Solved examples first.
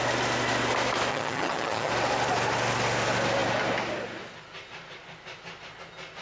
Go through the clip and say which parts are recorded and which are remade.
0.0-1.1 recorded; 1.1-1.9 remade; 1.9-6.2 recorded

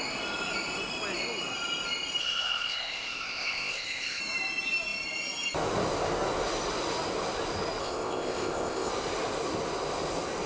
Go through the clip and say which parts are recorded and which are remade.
0.0-2.2 recorded; 2.2-4.2 remade; 4.2-7.8 recorded; 7.8-8.9 remade; 8.9-10.5 recorded

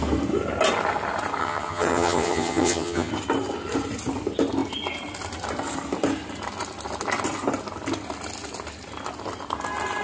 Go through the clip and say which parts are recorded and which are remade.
0.0-1.4 recorded; 1.4-3.1 remade; 3.1-10.0 recorded

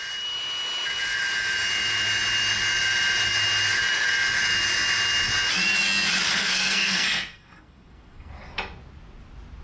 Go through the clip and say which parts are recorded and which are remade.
0.0-6.3 recorded; 6.3-8.4 remade; 8.4-9.6 recorded

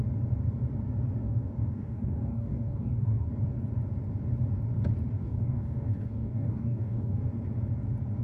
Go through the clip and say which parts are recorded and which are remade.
0.0-1.2 recorded; 1.2-3.3 remade; 3.3-5.2 recorded; 5.2-7.2 remade; 7.2-8.2 recorded

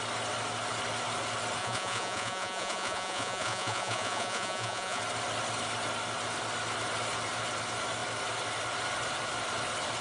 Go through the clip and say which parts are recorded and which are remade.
0.0-1.6 recorded; 1.6-5.0 remade; 5.0-10.0 recorded

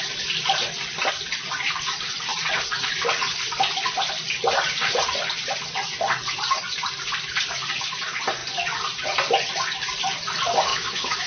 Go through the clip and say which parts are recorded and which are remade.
0.0-10.7 recorded; 10.7-11.3 remade